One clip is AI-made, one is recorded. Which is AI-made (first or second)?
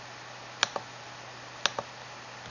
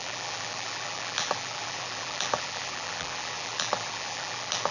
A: second